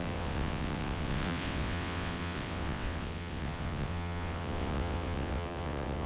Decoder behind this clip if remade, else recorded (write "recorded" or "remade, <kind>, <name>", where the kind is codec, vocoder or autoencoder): remade, vocoder, WaveNeXt